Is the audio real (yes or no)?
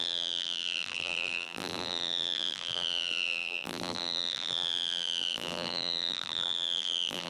no